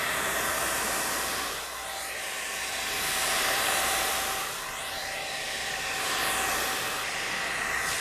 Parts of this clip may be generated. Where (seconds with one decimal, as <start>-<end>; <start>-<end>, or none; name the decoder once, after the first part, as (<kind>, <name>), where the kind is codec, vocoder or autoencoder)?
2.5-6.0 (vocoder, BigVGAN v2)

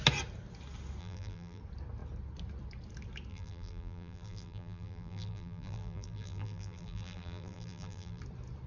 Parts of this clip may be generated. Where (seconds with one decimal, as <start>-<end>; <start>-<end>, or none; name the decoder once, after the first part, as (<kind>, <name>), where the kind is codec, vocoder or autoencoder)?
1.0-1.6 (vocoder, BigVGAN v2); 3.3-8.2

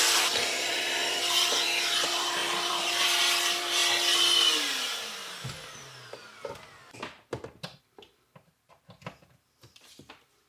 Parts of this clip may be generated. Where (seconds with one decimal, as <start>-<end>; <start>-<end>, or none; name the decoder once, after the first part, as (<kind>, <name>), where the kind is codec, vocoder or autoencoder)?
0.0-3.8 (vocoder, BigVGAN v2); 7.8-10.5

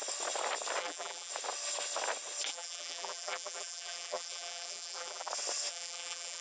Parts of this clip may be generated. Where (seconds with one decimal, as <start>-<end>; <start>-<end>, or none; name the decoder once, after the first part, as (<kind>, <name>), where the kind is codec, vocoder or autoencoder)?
0.8-1.3 (vocoder, BigVGAN v2); 2.5-5.3; 5.7-6.4

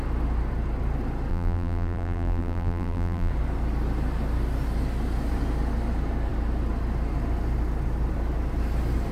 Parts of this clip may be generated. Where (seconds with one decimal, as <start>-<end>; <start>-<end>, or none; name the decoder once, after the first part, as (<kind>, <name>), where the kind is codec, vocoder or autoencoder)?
1.3-3.3 (vocoder, BigVGAN v2)